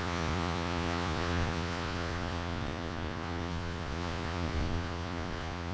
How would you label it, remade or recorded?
remade